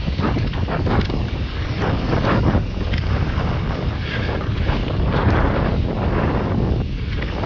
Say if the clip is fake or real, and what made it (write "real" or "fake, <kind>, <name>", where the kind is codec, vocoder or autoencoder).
fake, codec, DAC